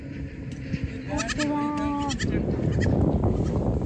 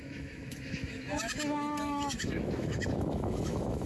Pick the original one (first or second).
first